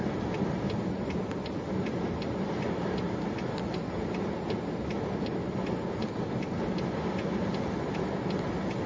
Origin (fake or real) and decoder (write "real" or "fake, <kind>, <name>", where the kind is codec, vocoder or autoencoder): real